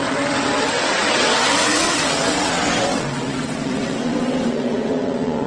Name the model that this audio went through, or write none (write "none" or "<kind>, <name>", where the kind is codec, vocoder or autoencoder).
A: vocoder, WaveNeXt